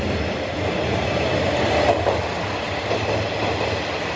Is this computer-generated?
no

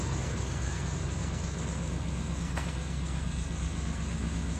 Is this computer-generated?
yes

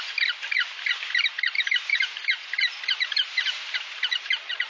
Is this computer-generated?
no